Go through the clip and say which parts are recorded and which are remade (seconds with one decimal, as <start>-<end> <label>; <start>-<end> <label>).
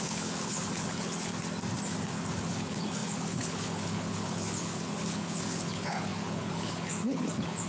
0.0-1.3 remade; 1.3-2.0 recorded; 2.0-7.7 remade